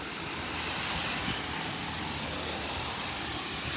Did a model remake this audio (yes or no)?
no